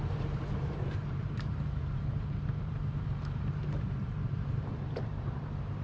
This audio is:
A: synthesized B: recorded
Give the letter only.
A